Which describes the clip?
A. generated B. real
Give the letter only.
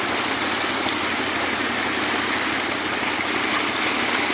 B